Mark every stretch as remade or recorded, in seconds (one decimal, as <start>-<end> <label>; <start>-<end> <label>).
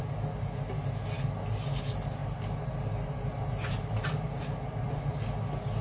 0.0-5.8 recorded